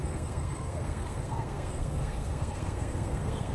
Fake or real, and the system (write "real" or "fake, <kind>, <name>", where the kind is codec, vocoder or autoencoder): fake, codec, SNAC